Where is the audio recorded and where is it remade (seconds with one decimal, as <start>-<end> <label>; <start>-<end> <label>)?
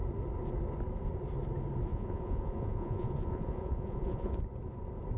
0.0-1.9 recorded; 1.9-4.4 remade; 4.4-5.2 recorded